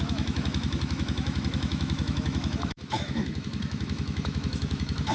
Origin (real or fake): fake